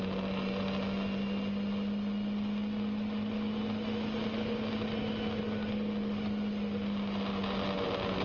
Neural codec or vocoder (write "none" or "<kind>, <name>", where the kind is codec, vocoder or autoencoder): none